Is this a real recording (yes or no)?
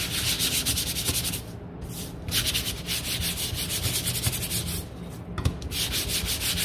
yes